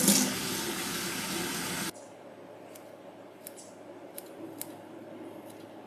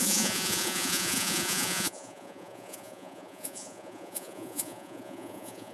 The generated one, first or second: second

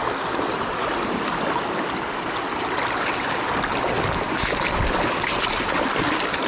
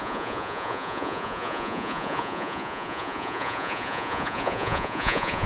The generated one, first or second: second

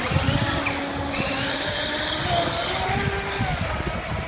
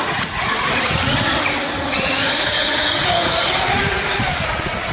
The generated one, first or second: second